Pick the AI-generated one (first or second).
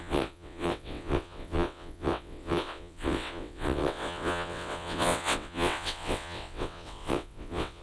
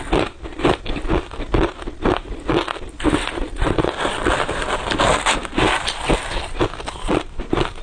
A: first